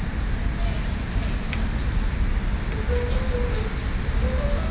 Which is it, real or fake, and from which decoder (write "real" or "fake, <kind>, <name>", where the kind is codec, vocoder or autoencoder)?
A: real